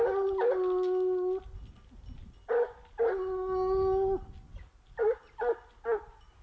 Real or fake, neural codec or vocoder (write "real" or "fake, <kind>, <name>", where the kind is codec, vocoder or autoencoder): real